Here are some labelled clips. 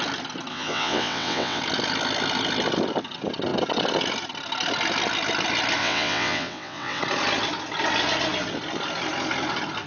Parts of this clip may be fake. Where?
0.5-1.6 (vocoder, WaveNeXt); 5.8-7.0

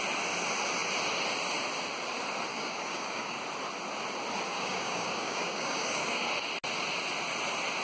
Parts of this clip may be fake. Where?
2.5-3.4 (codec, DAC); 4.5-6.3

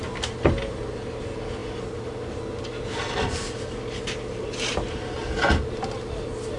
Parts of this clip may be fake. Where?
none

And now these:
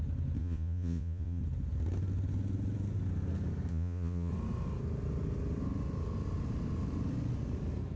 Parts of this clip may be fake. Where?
0.4-1.4 (vocoder, Vocos); 3.7-4.3